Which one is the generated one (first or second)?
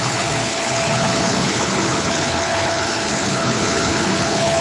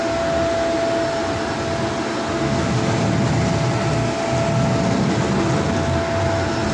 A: first